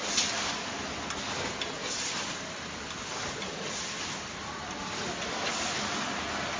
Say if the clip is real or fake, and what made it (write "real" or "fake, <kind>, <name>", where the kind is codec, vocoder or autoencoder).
real